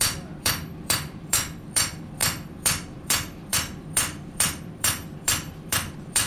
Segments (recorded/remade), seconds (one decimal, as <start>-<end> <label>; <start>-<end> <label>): 0.0-6.3 remade